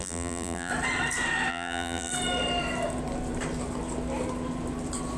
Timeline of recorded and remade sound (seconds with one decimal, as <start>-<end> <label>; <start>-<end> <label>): 0.0-0.7 remade; 0.7-1.5 recorded; 1.5-2.1 remade; 2.1-5.2 recorded